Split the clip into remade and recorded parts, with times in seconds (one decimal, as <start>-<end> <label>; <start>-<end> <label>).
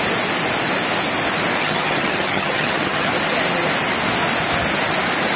0.0-1.6 recorded; 1.6-3.1 remade; 3.1-5.4 recorded